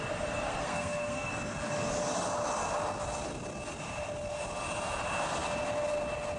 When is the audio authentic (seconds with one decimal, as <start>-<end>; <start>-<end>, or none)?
0.0-0.5; 1.3-6.4